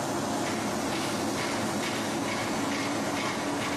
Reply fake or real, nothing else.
real